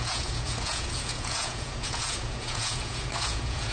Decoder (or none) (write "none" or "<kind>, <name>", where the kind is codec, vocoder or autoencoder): vocoder, Vocos